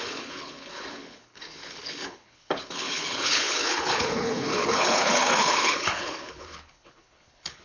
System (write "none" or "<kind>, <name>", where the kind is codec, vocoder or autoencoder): codec, HILCodec